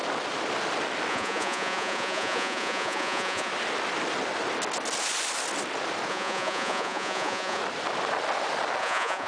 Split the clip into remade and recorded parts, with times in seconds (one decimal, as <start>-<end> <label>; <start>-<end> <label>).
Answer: 0.0-1.1 recorded; 1.1-3.5 remade; 3.5-6.1 recorded; 6.1-7.6 remade; 7.6-8.8 recorded; 8.8-9.3 remade